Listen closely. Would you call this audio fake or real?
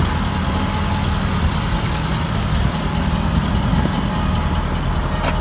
real